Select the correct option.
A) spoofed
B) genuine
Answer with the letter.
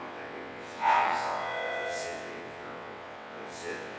A